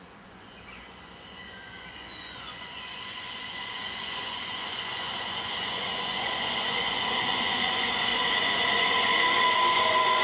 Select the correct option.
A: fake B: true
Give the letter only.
A